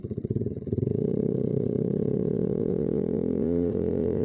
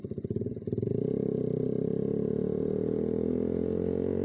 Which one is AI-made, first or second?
first